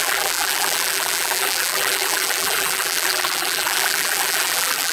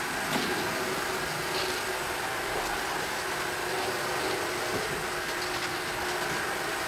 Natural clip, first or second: second